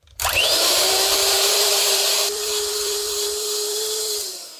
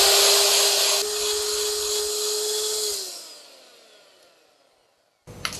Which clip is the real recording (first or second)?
second